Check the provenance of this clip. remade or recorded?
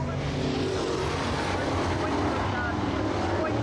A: recorded